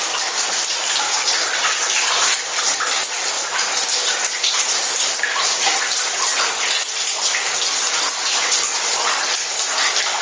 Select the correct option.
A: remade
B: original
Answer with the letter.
B